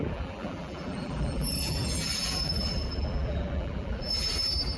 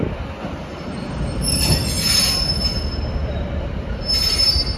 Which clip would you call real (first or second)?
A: second